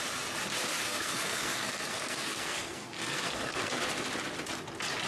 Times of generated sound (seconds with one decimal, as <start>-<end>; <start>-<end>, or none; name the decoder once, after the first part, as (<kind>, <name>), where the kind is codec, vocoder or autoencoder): 0.7-3.8 (codec, SNAC)